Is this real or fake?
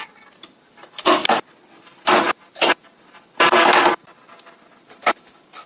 real